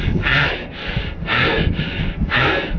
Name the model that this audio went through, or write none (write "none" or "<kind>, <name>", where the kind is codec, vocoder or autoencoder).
codec, SNAC